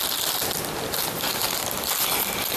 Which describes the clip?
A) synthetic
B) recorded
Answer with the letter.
B